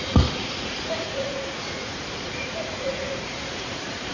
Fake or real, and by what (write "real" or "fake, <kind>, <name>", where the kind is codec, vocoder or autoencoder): fake, vocoder, Vocos